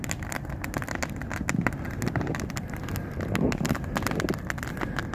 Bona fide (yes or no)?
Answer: yes